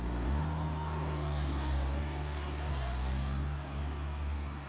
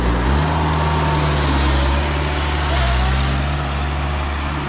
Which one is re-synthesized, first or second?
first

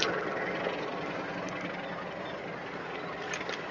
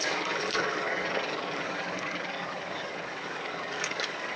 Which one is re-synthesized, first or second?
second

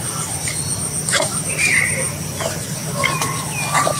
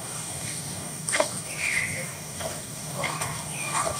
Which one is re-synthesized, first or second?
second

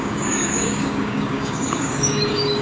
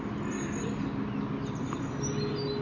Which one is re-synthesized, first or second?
first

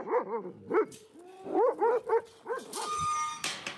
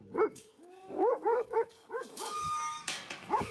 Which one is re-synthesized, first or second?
second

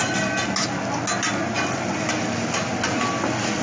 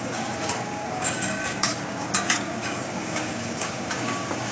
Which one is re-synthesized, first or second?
second